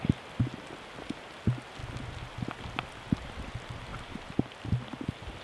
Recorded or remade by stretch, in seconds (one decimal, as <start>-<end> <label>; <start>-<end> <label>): 0.0-5.4 recorded